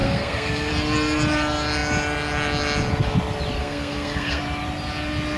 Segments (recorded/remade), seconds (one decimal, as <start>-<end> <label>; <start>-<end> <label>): 0.0-0.7 remade; 0.7-3.6 recorded; 3.6-4.4 remade; 4.4-5.4 recorded